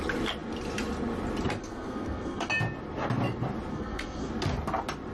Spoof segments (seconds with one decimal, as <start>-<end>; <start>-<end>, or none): 1.6-2.5; 3.7-4.3